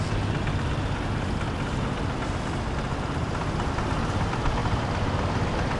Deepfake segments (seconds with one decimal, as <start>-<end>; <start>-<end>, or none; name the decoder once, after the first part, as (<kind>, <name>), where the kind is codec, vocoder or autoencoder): none